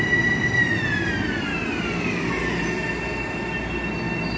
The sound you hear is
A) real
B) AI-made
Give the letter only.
A